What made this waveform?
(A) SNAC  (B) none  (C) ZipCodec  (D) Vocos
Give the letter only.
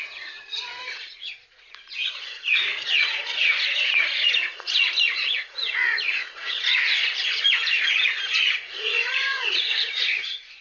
D